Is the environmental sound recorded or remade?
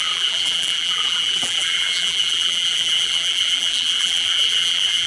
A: remade